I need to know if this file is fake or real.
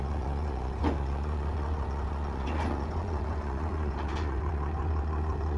fake